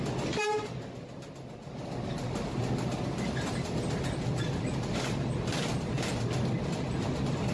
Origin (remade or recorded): recorded